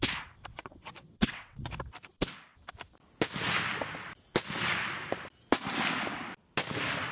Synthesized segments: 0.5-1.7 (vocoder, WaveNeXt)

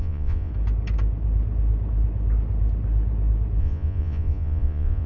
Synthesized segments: 0.0-0.5 (vocoder, Vocos); 3.6-5.1

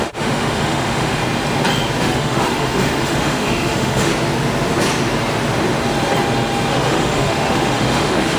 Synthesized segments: 0.0-1.2 (autoencoder, DAC-VAE); 2.0-4.1; 6.7-8.4

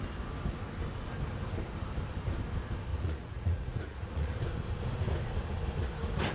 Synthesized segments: 2.9-4.4 (vocoder, Vocos)

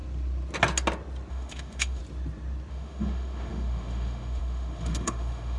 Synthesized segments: 1.3-2.0 (autoencoder, DAC-VAE); 2.7-5.6